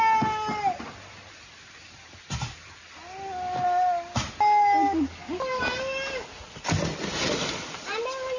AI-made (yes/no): no